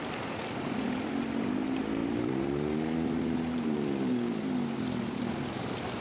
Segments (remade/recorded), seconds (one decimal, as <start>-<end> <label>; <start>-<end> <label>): 0.0-2.0 recorded; 2.0-4.3 remade; 4.3-6.0 recorded